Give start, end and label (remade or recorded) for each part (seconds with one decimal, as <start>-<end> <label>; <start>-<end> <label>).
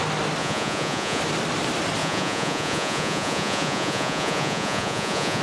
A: 0.0-0.4 recorded; 0.4-1.2 remade; 1.2-2.0 recorded; 2.0-5.4 remade